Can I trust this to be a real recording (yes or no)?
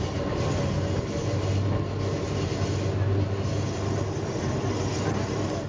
yes